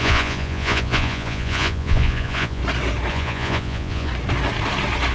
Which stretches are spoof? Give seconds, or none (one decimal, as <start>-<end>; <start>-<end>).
0.0-2.6; 3.1-4.1